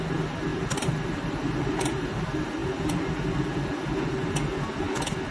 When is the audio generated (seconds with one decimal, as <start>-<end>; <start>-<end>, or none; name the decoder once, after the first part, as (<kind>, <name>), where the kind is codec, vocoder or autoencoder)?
0.5-2.2 (vocoder, BigVGAN v2)

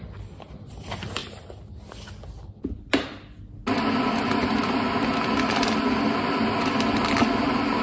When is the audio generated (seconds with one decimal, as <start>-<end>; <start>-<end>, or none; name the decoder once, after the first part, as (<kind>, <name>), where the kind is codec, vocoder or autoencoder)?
none

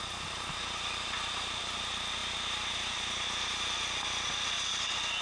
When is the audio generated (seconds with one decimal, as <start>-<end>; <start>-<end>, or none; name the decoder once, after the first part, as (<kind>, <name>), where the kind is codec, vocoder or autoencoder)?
none

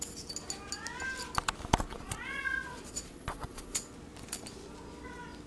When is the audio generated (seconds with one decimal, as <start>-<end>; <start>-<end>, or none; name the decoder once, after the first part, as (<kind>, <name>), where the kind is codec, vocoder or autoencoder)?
1.9-3.9 (vocoder, Vocos)